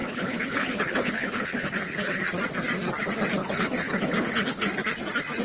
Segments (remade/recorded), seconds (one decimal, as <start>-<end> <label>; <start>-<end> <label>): 0.0-2.2 remade; 2.2-3.4 recorded; 3.4-4.7 remade; 4.7-5.4 recorded

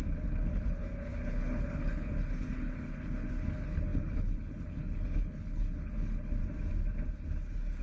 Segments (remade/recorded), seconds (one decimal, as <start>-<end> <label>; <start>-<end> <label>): 0.0-6.4 remade; 6.4-7.8 recorded

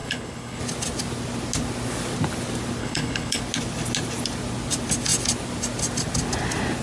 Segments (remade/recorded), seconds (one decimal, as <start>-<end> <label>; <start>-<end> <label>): 0.0-0.6 remade; 0.6-2.8 recorded; 2.8-3.4 remade; 3.4-6.8 recorded

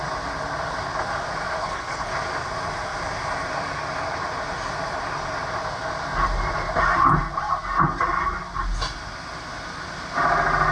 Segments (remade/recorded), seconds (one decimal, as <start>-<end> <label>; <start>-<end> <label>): 0.0-1.6 recorded; 1.6-2.1 remade; 2.1-10.7 recorded

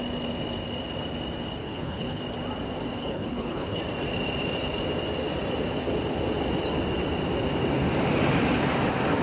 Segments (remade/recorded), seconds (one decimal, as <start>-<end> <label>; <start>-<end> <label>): 0.0-1.6 recorded; 1.6-2.2 remade; 2.2-3.0 recorded; 3.0-3.8 remade; 3.8-9.2 recorded

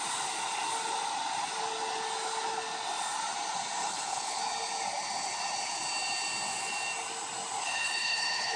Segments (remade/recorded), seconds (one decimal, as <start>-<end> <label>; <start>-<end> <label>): 0.0-3.8 recorded; 3.8-4.4 remade; 4.4-7.6 recorded; 7.6-8.6 remade

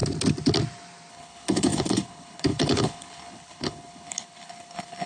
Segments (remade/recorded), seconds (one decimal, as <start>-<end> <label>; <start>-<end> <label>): 0.0-1.1 recorded; 1.1-5.1 remade